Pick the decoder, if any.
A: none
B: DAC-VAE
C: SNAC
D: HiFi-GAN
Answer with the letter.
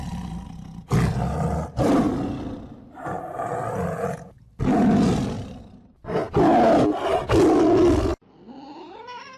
A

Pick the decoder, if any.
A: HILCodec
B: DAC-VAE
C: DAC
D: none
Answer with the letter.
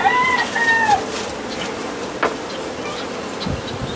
D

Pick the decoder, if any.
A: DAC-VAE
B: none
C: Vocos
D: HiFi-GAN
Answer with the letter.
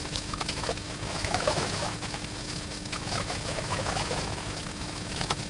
A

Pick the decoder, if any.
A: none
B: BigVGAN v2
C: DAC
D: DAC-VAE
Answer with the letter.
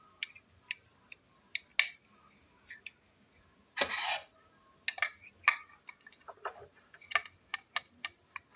A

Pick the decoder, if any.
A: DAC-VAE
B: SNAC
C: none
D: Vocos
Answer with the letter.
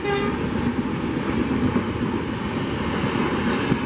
C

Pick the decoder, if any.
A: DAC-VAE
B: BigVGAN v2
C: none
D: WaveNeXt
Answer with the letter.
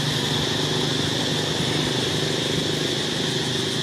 C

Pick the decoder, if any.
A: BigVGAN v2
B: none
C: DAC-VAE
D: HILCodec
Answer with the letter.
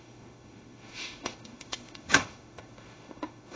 C